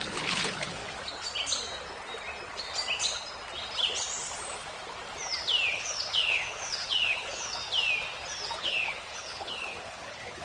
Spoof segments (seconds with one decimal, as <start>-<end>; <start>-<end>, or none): 0.0-0.8; 5.7-7.6; 8.6-10.4